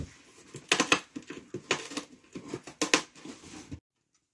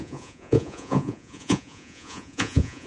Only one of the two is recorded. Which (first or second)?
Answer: first